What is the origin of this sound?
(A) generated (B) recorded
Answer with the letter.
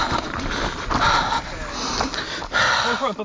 B